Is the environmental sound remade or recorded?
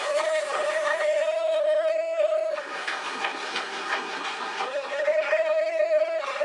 remade